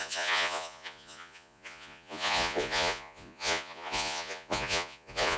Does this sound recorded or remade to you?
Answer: remade